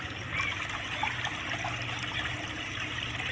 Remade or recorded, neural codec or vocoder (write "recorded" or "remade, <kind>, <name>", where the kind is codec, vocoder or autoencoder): recorded